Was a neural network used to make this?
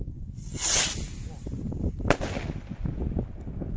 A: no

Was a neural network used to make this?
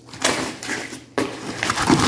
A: no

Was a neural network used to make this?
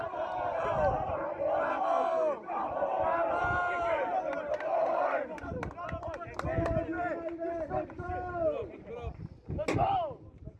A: no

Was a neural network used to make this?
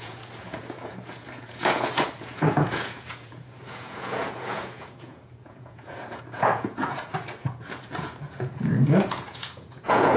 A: yes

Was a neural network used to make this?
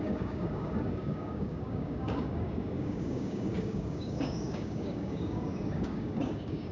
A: yes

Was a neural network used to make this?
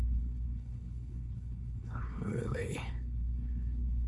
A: yes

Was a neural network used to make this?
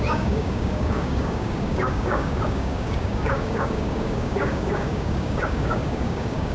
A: yes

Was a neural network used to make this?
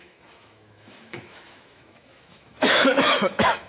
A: yes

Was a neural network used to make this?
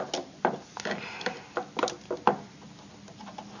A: no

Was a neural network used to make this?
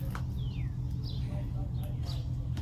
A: no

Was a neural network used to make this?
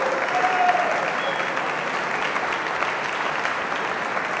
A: no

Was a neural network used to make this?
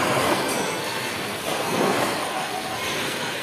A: yes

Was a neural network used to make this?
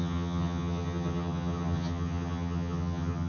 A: yes